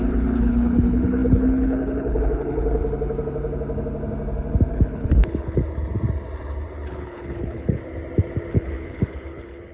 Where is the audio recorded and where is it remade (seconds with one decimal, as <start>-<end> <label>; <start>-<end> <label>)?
0.0-2.8 remade; 2.8-4.7 recorded; 4.7-5.6 remade; 5.6-6.9 recorded; 6.9-7.8 remade; 7.8-8.5 recorded; 8.5-9.7 remade